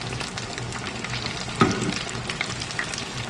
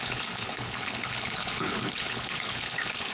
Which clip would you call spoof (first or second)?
second